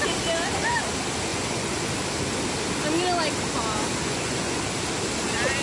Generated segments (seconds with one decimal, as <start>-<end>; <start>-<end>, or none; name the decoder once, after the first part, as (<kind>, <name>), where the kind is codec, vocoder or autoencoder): 1.3-1.9 (vocoder, Vocos); 4.0-4.6